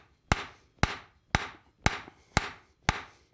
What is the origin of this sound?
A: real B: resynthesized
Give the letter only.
A